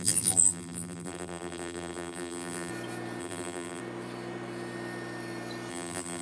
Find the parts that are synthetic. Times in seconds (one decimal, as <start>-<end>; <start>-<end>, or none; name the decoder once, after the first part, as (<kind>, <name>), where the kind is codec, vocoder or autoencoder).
0.0-2.7 (vocoder, BigVGAN v2); 3.2-3.8; 5.7-6.2